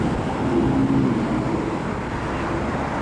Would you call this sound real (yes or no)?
yes